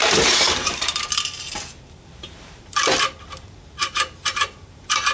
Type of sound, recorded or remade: remade